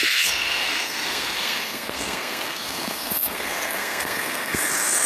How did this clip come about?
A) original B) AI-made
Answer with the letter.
B